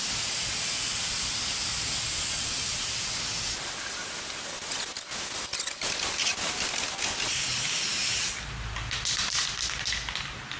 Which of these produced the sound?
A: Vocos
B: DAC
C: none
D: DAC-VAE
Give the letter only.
C